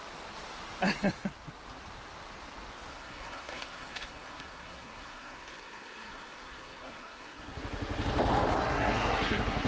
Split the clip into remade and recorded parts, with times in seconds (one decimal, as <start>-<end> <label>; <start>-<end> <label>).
0.0-2.9 recorded; 2.9-7.6 remade; 7.6-8.6 recorded; 8.6-9.7 remade